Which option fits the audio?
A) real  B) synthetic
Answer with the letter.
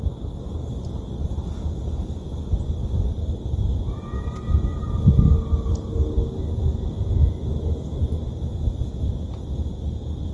A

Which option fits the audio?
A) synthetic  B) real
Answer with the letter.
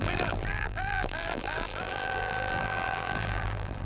A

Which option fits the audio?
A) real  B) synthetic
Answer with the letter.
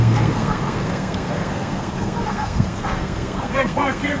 B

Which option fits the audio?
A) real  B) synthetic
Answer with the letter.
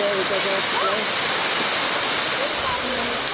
A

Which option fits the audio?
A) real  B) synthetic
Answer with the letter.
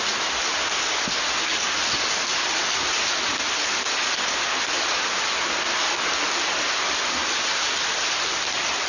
A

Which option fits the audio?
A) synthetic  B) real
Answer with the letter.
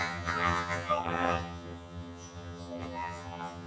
A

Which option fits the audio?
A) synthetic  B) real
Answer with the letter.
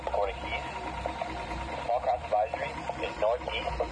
B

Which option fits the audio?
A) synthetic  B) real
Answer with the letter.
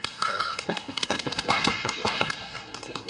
A